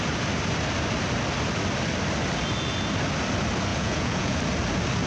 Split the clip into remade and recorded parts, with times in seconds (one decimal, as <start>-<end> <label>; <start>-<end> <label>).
0.0-3.7 recorded; 3.7-4.4 remade; 4.4-5.1 recorded